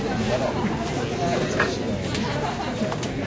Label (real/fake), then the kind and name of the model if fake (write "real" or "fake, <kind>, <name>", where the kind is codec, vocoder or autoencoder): real